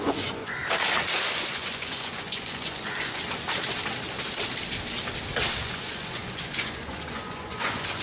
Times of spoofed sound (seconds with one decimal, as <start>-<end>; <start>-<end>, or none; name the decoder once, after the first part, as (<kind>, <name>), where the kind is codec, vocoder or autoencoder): 0.0-0.6 (vocoder, Vocos); 1.2-3.2; 5.6-8.0